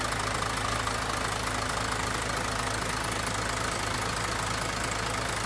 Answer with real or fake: real